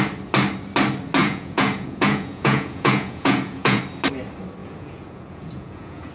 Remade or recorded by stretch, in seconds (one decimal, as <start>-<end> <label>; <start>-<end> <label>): 0.0-1.2 recorded; 1.2-3.8 remade; 3.8-4.6 recorded; 4.6-6.1 remade

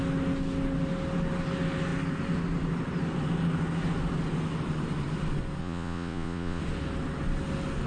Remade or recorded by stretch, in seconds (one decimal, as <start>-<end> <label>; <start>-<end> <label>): 0.0-5.6 recorded; 5.6-6.6 remade; 6.6-7.9 recorded

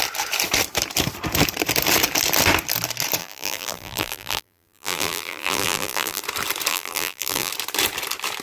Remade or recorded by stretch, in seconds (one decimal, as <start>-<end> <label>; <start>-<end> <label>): 0.0-3.2 recorded; 3.2-6.2 remade; 6.2-6.7 recorded; 6.7-7.5 remade; 7.5-8.4 recorded

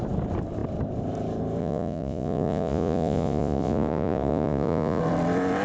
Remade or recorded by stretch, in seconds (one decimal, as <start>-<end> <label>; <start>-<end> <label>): 0.0-1.6 recorded; 1.6-5.0 remade; 5.0-5.6 recorded

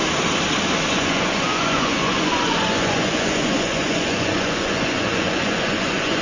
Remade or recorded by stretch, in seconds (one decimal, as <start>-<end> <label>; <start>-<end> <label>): 0.0-0.9 recorded; 0.9-6.2 remade

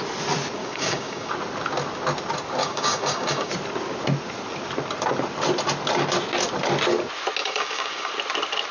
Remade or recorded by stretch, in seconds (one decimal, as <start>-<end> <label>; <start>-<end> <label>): 0.0-0.6 recorded; 0.6-1.3 remade; 1.3-2.6 recorded; 2.6-3.5 remade; 3.5-7.4 recorded; 7.4-8.1 remade; 8.1-8.7 recorded